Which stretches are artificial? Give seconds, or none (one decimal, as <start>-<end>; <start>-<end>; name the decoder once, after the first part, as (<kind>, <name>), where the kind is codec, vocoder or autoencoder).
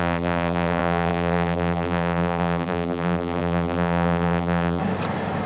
0.0-4.8 (vocoder, BigVGAN v2)